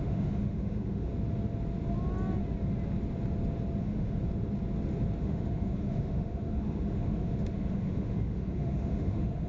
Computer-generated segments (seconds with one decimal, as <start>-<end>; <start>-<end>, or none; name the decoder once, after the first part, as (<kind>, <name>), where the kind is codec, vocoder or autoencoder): 0.0-1.1 (autoencoder, DAC-VAE); 3.8-4.2; 5.2-9.5